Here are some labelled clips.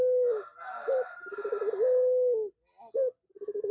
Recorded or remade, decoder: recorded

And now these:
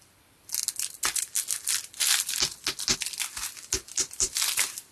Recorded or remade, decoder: recorded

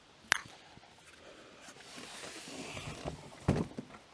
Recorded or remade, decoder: recorded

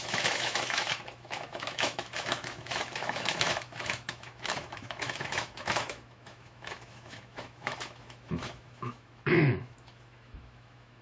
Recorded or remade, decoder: remade, autoencoder, DAC-VAE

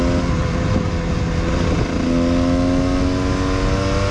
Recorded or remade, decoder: recorded